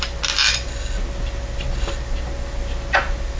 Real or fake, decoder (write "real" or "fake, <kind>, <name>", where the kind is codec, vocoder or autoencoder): real